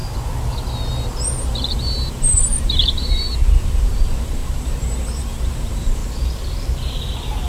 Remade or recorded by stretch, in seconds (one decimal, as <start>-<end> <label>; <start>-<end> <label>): 0.0-1.4 recorded; 1.4-6.0 remade; 6.0-7.5 recorded